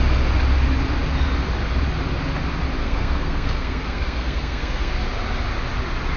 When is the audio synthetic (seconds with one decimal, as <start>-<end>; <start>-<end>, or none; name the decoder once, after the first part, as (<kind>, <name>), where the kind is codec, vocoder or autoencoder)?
2.8-4.9 (codec, SNAC)